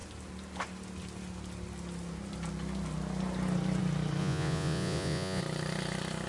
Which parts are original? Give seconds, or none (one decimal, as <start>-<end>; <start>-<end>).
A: 0.0-4.2; 5.4-6.3